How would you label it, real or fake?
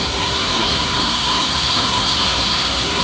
fake